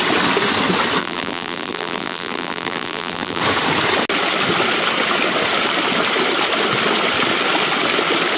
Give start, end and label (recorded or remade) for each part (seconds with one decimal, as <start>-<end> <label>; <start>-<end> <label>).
0.0-1.0 recorded; 1.0-3.4 remade; 3.4-8.4 recorded

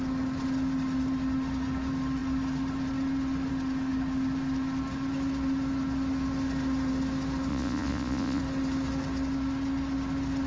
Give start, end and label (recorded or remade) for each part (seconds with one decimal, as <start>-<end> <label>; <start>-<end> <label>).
0.0-7.5 recorded; 7.5-8.4 remade; 8.4-10.5 recorded

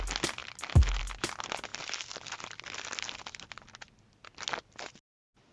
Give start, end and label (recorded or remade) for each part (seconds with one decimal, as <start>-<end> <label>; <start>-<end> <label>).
0.0-5.5 recorded

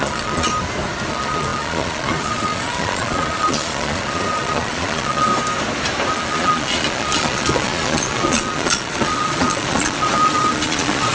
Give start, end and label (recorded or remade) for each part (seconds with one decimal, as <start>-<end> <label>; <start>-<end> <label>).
0.0-0.5 remade; 0.5-1.1 recorded; 1.1-5.3 remade; 5.3-6.1 recorded; 6.1-11.1 remade